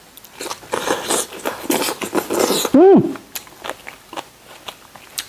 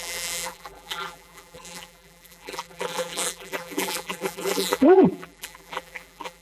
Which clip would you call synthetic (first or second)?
second